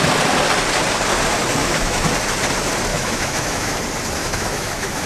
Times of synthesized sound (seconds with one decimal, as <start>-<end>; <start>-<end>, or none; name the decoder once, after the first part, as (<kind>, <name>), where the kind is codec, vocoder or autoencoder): 1.6-2.1 (autoencoder, DAC-VAE); 2.9-3.8; 4.2-5.1